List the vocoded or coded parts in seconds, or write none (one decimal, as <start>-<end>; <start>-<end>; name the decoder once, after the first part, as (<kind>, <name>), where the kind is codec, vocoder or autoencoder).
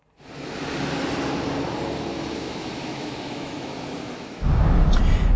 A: 2.4-4.4 (autoencoder, DAC-VAE)